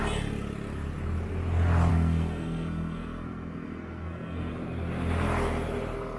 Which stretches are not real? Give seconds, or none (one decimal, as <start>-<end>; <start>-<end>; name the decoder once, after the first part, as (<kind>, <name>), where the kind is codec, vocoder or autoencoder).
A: 1.9-4.5 (codec, SNAC)